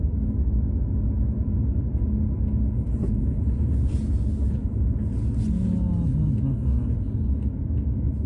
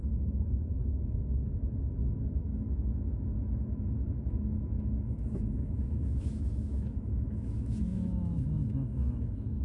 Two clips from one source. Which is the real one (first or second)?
first